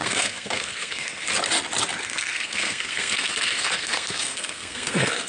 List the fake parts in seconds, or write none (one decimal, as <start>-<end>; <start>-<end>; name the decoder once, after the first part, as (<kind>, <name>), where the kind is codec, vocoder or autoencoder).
0.0-1.3 (codec, SNAC); 2.0-5.3